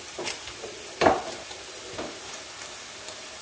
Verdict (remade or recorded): recorded